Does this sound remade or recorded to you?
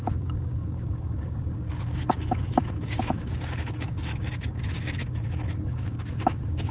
remade